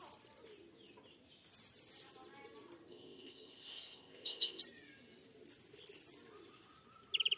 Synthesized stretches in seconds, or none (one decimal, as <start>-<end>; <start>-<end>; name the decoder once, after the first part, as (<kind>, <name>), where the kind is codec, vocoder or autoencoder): 2.9-4.6 (codec, ZipCodec)